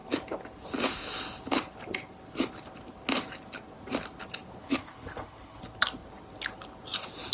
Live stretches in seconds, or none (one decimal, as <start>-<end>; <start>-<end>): 0.0-4.6; 5.6-7.3